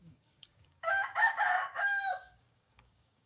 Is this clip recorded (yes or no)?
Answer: no